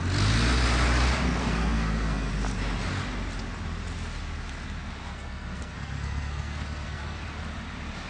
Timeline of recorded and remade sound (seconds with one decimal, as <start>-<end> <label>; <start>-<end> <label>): 0.0-1.4 recorded; 1.4-2.3 remade; 2.3-5.0 recorded; 5.0-7.2 remade; 7.2-8.1 recorded